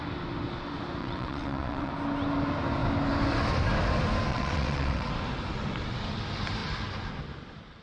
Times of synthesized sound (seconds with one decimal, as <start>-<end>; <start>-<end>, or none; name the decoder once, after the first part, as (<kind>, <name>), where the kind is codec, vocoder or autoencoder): 1.0-1.9 (vocoder, WaveNeXt); 4.3-5.1